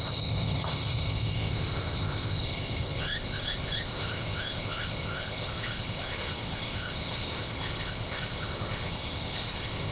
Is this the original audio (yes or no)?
no